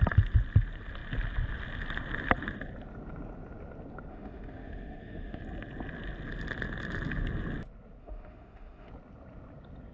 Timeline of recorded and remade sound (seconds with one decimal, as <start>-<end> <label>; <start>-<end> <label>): 0.0-4.1 recorded; 4.1-5.4 remade; 5.4-8.0 recorded; 8.0-8.9 remade; 8.9-9.9 recorded